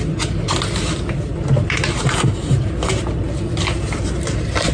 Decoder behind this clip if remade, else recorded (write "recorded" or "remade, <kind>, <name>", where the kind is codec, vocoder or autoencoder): recorded